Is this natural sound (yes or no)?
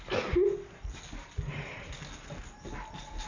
yes